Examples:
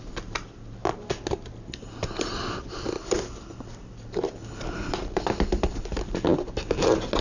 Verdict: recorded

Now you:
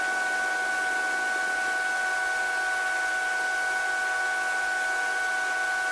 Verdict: recorded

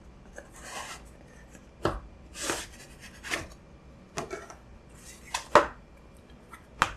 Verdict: recorded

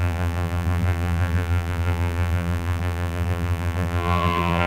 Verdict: remade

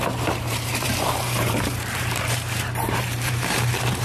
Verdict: remade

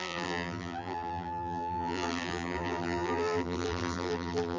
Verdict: remade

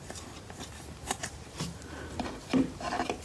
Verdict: remade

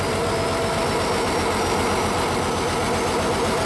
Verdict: recorded